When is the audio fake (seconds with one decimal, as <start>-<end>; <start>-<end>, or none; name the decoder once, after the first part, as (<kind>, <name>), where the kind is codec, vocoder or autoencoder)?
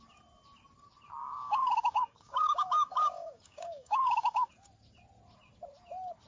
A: 1.2-4.5 (codec, DAC)